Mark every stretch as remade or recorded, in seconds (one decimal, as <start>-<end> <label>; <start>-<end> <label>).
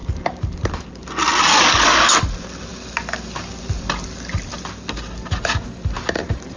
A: 0.0-6.6 recorded